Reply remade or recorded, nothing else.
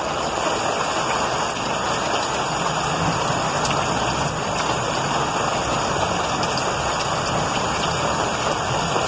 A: recorded